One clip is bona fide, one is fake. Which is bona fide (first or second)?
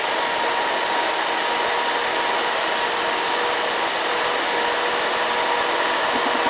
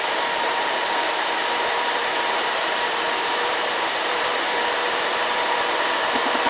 first